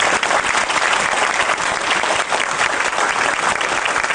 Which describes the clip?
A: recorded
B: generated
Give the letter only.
A